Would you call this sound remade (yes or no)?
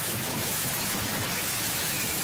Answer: yes